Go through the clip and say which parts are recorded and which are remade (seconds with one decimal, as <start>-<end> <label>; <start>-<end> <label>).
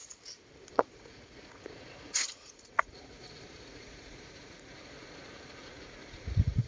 0.0-0.7 recorded; 0.7-6.7 remade